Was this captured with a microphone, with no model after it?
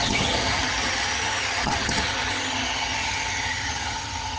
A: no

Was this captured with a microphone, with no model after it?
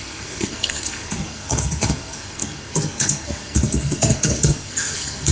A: no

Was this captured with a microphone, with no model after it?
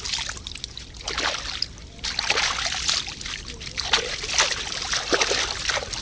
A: yes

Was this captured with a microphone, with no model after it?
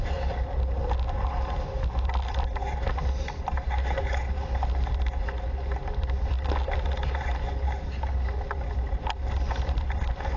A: yes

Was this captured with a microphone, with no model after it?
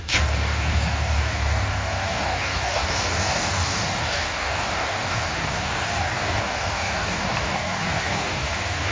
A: no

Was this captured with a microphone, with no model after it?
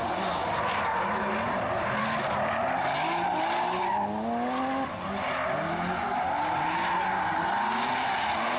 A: yes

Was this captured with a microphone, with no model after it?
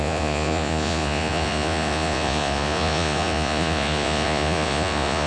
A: no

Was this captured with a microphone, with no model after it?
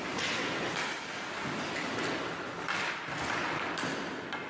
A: yes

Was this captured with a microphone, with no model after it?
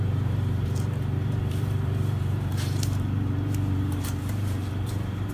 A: no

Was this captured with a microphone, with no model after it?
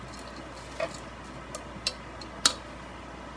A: yes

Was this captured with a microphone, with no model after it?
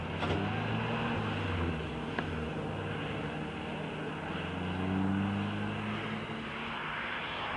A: yes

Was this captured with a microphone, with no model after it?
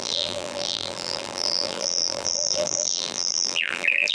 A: no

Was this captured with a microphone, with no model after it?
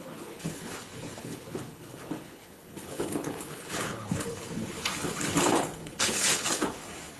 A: no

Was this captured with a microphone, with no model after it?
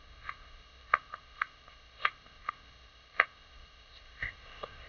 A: no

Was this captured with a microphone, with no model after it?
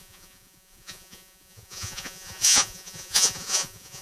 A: no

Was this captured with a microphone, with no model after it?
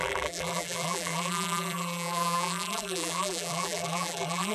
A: no